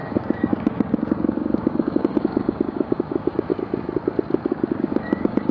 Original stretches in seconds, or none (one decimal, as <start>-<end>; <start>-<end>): 3.5-4.5